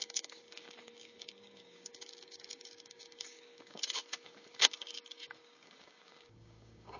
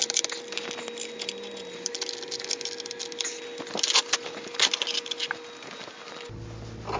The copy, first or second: first